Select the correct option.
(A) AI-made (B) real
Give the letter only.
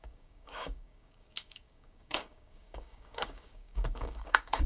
A